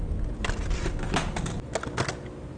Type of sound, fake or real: real